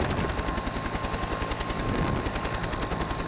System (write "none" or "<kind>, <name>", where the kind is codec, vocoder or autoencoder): none